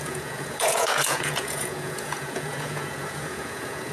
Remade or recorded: remade